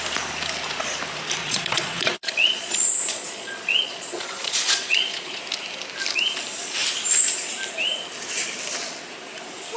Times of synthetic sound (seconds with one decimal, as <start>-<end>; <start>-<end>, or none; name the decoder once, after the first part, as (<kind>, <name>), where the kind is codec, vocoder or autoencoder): 1.4-5.4 (vocoder, Vocos)